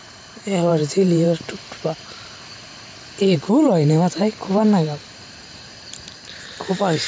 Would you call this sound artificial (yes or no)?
yes